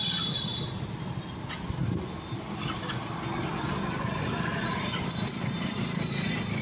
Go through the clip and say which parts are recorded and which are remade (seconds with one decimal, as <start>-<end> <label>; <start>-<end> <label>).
0.0-4.5 recorded; 4.5-5.0 remade; 5.0-6.6 recorded